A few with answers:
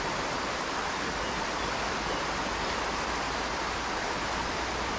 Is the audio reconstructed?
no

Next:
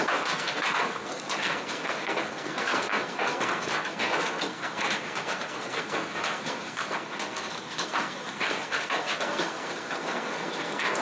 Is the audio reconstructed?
yes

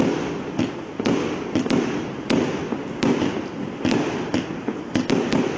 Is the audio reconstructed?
no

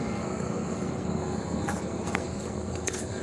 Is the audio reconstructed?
yes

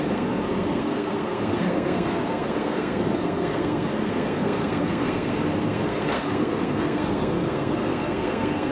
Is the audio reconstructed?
yes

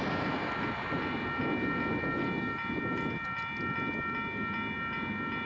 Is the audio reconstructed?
no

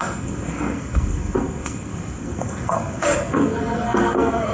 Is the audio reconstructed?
yes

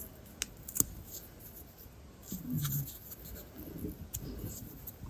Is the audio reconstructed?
no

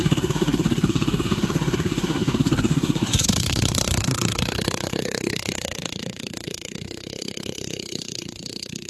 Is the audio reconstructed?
yes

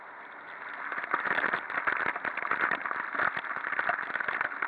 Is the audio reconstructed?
no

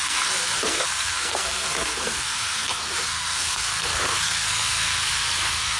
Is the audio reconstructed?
yes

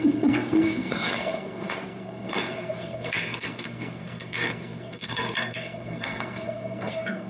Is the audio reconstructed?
yes